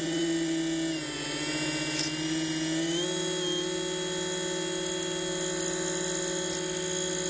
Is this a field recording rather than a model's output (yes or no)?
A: yes